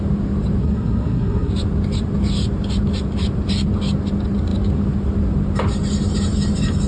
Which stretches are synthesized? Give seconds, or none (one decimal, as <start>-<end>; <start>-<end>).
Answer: 0.6-1.5